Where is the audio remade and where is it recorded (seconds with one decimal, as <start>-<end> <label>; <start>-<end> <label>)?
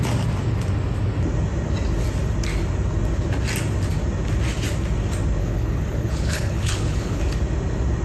0.0-5.4 recorded; 5.4-7.2 remade; 7.2-8.0 recorded